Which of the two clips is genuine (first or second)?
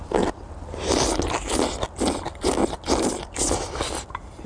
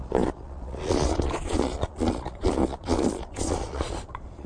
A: first